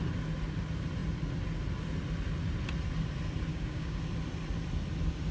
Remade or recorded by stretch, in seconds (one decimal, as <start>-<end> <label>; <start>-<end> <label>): 0.0-3.5 recorded; 3.5-4.0 remade; 4.0-5.3 recorded